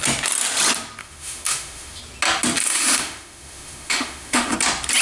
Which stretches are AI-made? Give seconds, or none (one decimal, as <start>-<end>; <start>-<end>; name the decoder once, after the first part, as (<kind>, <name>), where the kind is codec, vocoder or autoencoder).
1.0-2.0 (autoencoder, DAC-VAE); 2.6-4.5